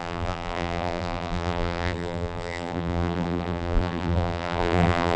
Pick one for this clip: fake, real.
fake